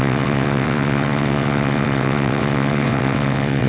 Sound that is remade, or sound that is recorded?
remade